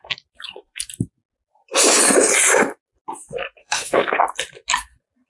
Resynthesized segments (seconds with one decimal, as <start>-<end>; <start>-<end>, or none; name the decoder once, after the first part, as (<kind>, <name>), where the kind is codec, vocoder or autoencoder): 3.6-4.2 (autoencoder, DAC-VAE)